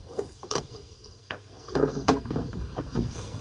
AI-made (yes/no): yes